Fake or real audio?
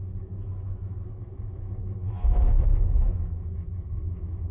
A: fake